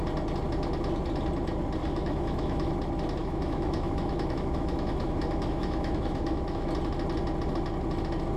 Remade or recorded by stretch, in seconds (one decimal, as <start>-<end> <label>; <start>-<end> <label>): 0.0-1.8 recorded; 1.8-2.7 remade; 2.7-3.2 recorded; 3.2-6.7 remade; 6.7-8.4 recorded

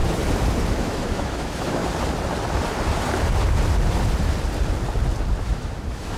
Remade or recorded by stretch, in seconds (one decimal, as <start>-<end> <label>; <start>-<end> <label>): 0.0-0.7 recorded; 0.7-1.8 remade; 1.8-5.4 recorded; 5.4-6.2 remade